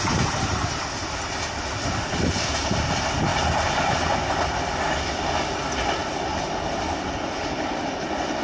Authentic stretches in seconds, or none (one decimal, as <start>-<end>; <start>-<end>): 0.0-8.4